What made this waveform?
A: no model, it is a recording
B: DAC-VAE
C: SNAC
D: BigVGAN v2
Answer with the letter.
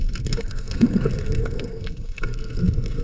C